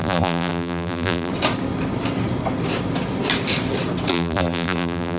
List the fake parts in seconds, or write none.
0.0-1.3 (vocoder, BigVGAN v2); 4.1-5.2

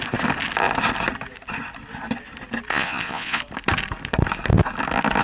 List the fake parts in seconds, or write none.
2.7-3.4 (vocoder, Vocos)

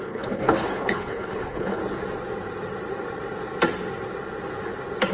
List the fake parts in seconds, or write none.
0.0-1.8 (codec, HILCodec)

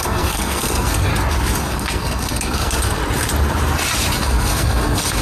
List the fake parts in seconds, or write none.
0.0-1.1 (codec, SNAC); 1.6-3.0; 4.1-5.2

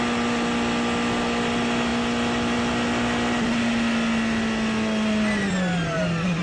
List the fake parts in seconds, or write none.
none

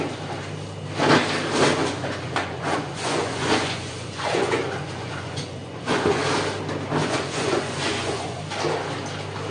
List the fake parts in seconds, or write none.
1.8-6.2 (vocoder, Vocos); 7.0-8.4

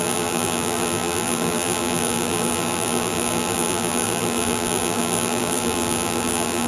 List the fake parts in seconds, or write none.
0.0-6.7 (vocoder, BigVGAN v2)